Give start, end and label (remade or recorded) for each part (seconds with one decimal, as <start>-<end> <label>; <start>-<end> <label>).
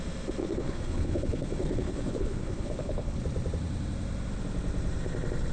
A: 0.0-0.4 recorded; 0.4-3.2 remade; 3.2-5.5 recorded